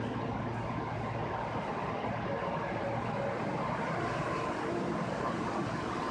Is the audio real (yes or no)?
yes